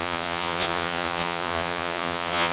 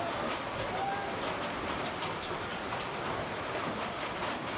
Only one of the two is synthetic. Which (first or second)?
first